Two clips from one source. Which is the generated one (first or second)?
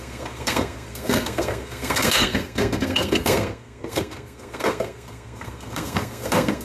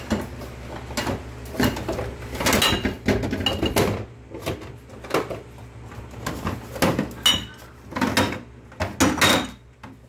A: first